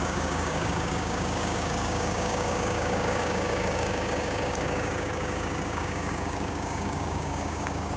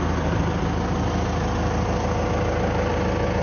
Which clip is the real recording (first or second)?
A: second